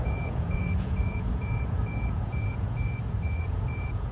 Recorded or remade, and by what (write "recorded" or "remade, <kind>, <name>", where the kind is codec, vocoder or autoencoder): remade, vocoder, Vocos